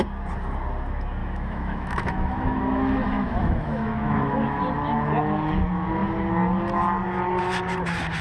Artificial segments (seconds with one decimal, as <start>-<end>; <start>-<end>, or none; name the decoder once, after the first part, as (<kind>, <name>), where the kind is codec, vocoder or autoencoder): 1.2-4.6 (autoencoder, DAC-VAE)